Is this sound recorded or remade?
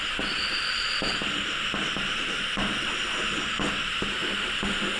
recorded